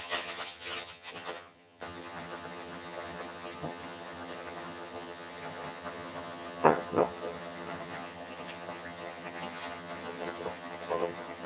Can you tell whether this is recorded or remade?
remade